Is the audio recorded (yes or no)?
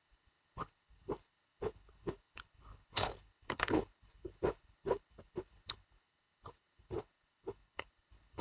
no